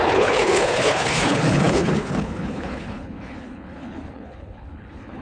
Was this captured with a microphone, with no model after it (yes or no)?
no